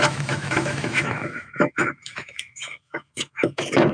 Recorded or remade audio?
remade